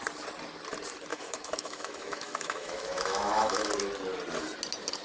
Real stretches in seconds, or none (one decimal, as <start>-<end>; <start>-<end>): 0.0-1.1; 3.7-5.0